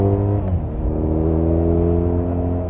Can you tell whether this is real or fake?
real